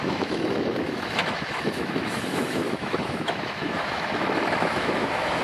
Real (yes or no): no